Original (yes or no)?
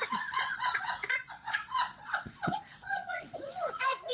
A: no